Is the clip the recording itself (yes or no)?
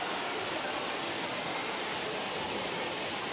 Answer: yes